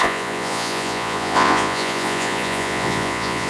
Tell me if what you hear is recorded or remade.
remade